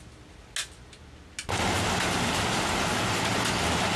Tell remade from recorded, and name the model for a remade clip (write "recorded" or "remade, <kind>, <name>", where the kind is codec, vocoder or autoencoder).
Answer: recorded